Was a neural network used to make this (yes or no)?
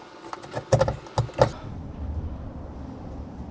no